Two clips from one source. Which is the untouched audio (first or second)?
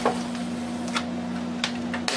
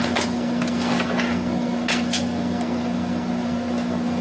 first